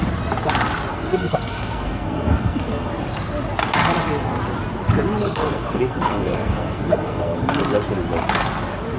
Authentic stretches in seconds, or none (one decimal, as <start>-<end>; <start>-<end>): 0.0-0.9; 2.9-5.2; 7.6-9.0